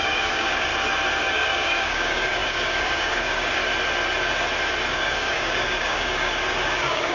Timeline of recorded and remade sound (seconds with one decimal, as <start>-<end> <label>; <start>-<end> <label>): 0.0-0.7 remade; 0.7-1.2 recorded; 1.2-3.6 remade; 3.6-4.9 recorded; 4.9-7.1 remade